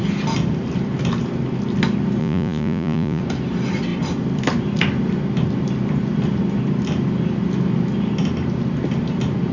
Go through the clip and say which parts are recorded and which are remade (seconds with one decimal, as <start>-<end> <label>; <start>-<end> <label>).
0.0-2.2 recorded; 2.2-3.2 remade; 3.2-9.5 recorded